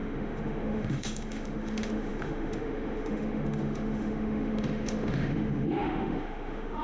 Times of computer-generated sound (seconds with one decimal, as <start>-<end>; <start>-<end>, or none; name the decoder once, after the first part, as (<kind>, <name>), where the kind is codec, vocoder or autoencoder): 0.0-6.8 (autoencoder, DAC-VAE)